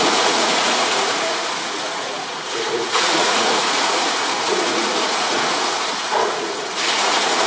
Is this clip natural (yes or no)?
no